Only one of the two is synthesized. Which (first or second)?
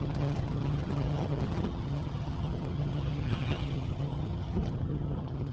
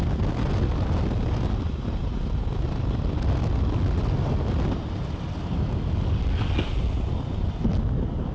first